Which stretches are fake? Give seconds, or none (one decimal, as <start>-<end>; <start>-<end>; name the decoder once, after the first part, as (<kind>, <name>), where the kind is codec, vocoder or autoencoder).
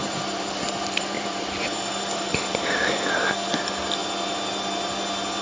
0.0-3.2 (vocoder, BigVGAN v2)